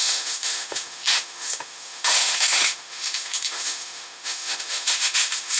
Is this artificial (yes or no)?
yes